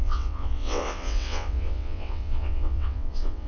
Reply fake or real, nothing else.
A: fake